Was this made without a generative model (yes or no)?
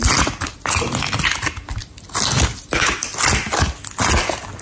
yes